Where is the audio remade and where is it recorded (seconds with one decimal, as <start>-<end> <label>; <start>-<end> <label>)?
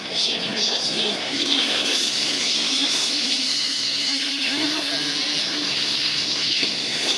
0.0-4.9 remade; 4.9-5.4 recorded; 5.4-7.2 remade